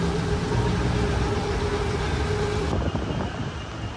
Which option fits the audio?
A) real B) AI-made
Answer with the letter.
A